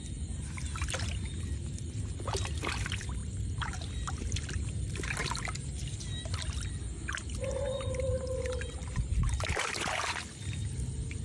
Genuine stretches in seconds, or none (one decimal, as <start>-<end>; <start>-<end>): 0.0-3.2; 3.9-9.1